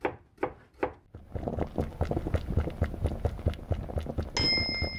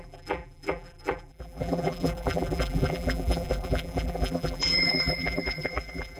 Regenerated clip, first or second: second